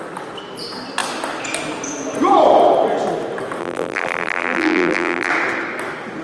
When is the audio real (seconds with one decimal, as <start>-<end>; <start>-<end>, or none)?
0.0-3.6; 5.3-6.2